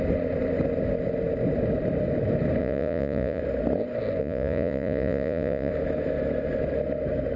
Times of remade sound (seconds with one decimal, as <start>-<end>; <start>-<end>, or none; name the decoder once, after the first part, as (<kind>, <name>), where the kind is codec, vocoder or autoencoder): 2.6-3.4 (vocoder, Vocos); 4.2-5.7